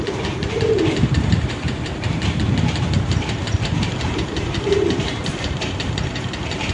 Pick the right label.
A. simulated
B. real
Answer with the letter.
A